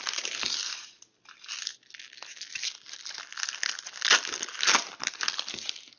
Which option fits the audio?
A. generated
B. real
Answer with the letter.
B